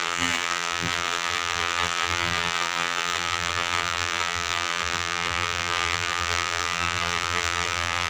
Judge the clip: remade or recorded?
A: remade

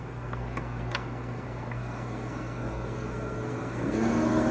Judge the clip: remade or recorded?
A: remade